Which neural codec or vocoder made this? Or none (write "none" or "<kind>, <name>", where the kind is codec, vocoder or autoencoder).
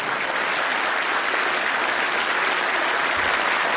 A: none